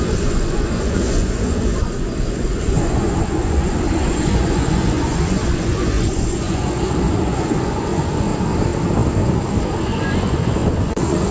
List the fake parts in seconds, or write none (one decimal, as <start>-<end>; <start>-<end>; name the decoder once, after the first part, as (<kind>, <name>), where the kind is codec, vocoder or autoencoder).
0.0-8.3 (vocoder, Vocos); 9.8-11.3